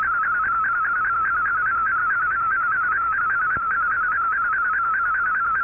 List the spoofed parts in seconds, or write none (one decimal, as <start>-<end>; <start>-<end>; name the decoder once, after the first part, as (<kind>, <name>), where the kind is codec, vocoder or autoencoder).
2.0-3.2 (autoencoder, DAC-VAE)